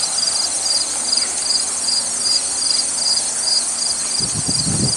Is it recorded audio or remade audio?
recorded